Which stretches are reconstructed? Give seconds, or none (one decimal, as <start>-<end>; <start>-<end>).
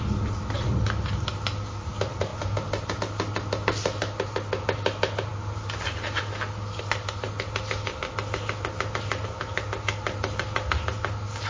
none